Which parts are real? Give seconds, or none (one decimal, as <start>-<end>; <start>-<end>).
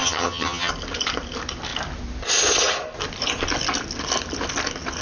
0.7-5.0